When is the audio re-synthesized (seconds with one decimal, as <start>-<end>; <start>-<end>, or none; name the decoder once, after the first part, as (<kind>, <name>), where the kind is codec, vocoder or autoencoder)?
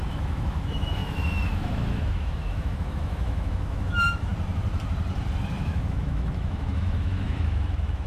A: 0.0-4.3 (autoencoder, DAC-VAE); 5.6-8.1